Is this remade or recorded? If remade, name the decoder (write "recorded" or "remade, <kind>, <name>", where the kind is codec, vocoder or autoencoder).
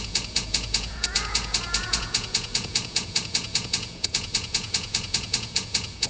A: remade, vocoder, Vocos